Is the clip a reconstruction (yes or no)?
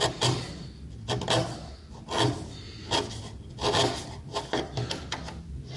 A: no